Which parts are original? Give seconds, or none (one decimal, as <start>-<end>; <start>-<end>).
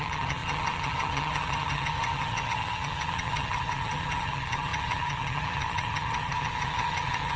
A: none